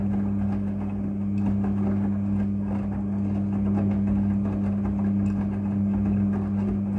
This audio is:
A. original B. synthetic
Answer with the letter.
A